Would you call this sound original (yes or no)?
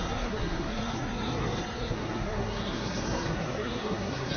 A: no